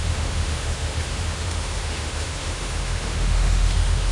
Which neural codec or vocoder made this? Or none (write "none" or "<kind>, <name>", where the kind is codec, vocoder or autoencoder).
autoencoder, DAC-VAE